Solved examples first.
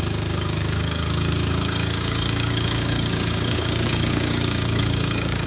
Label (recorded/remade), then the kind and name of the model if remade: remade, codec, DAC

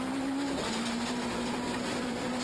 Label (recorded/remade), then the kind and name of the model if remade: remade, vocoder, BigVGAN v2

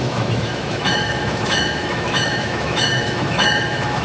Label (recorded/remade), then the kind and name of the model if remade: remade, autoencoder, DAC-VAE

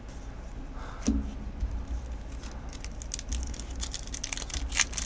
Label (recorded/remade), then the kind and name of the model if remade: recorded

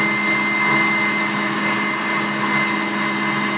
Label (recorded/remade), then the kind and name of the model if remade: recorded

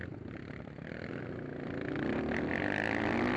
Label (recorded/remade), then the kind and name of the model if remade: recorded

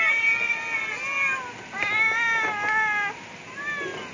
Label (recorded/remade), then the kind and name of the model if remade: recorded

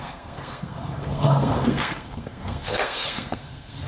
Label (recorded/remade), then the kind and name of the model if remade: remade, codec, SNAC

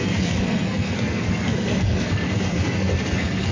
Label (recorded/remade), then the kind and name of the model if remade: remade, codec, SNAC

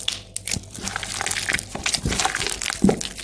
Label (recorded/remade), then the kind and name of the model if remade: recorded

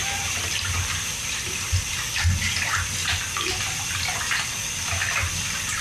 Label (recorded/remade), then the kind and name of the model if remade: remade, vocoder, BigVGAN v2